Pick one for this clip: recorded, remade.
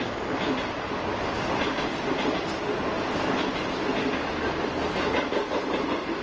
recorded